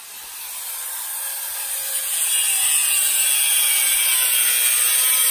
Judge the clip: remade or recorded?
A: recorded